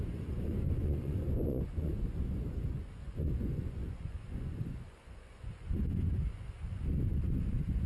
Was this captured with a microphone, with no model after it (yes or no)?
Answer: no